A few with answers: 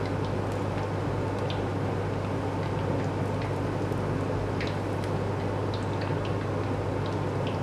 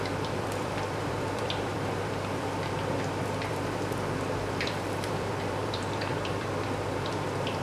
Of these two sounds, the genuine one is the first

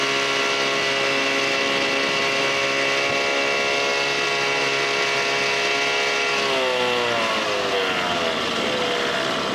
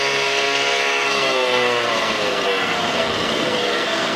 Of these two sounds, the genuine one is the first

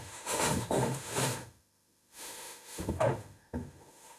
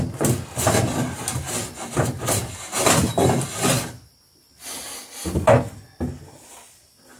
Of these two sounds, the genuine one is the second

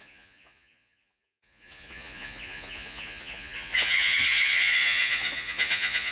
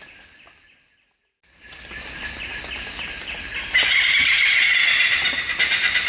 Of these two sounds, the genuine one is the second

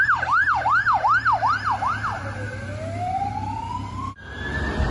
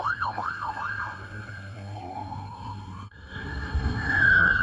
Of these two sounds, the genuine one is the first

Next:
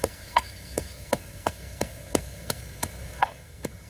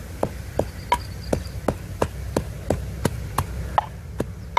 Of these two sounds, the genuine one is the second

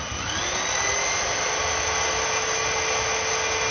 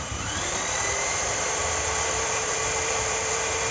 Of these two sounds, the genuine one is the first